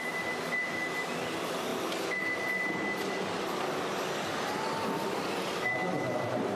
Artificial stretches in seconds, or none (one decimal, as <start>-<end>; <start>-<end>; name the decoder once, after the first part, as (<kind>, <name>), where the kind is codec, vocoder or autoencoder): none